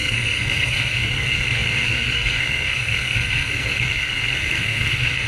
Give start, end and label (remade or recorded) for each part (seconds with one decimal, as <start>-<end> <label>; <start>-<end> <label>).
0.0-5.3 remade